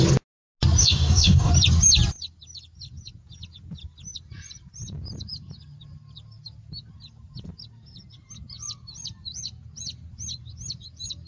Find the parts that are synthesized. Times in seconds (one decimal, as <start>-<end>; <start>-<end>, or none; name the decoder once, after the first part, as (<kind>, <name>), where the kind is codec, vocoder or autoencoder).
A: 0.8-1.5 (codec, DAC)